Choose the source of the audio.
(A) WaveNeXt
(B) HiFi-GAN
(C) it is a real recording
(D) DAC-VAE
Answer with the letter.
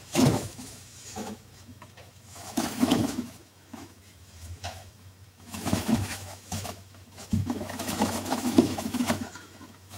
D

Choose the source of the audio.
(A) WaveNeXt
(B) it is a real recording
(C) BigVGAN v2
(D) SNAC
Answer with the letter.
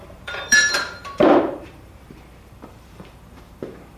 C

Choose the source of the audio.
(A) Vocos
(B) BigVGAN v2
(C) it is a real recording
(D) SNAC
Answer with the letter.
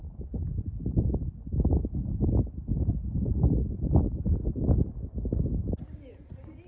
C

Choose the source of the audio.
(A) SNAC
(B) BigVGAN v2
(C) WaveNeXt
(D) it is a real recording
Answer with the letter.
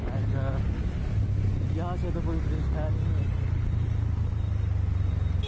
D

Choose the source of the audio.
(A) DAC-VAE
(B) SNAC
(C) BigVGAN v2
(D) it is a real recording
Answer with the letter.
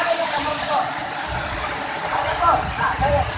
D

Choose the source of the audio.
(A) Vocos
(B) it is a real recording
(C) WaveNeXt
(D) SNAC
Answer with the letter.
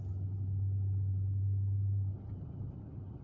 B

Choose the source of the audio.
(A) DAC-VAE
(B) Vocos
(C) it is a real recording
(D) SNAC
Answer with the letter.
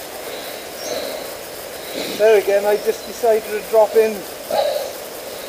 C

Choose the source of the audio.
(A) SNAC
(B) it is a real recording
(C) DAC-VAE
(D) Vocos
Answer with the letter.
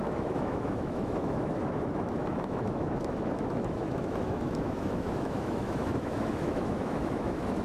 C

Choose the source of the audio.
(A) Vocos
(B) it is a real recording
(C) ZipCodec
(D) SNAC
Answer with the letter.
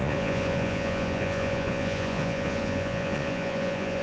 A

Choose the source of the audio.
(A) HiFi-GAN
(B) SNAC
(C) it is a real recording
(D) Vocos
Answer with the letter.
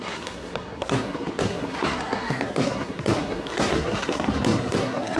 B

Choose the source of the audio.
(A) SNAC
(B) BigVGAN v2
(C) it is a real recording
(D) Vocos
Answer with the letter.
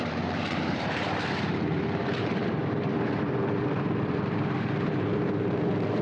B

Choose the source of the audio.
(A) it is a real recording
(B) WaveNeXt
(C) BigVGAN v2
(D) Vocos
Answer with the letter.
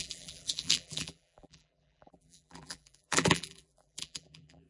C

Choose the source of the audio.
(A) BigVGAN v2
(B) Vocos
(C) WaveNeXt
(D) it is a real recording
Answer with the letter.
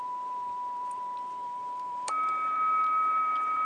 A